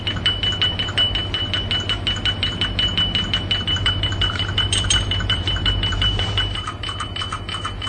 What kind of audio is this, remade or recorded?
remade